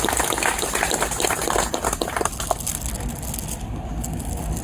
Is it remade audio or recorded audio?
recorded